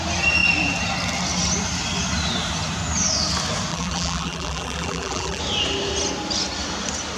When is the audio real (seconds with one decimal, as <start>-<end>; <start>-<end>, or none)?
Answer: 0.0-3.7; 5.4-7.2